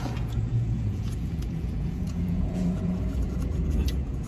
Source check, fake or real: fake